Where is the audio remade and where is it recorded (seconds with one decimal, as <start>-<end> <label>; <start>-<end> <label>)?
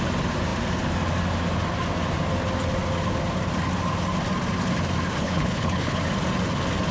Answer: 0.0-5.2 recorded; 5.2-6.0 remade; 6.0-6.9 recorded